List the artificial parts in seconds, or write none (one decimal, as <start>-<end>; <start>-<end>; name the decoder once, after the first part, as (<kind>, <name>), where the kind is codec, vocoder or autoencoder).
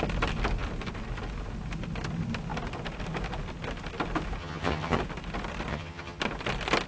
4.4-5.0 (vocoder, HiFi-GAN); 5.7-6.2